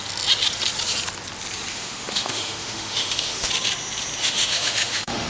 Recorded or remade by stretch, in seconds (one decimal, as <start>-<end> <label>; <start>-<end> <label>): 0.0-1.7 recorded; 1.7-3.5 remade; 3.5-4.2 recorded; 4.2-5.3 remade